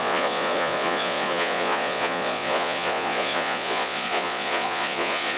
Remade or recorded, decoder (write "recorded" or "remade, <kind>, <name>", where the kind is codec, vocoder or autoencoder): remade, vocoder, Vocos